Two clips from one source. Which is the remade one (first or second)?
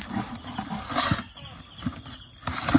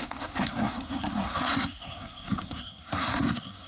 second